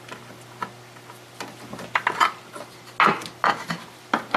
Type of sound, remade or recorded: recorded